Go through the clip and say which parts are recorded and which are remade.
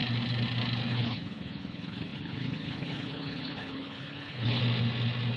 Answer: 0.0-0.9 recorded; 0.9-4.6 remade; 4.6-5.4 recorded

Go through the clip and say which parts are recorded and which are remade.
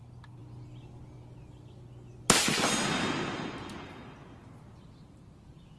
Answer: 0.0-5.8 recorded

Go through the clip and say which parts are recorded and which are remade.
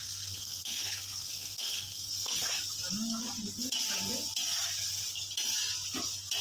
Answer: 0.0-2.6 remade; 2.6-6.4 recorded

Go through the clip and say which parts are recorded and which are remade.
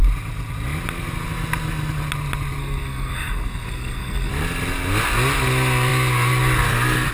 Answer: 0.0-2.6 recorded; 2.6-4.3 remade; 4.3-7.1 recorded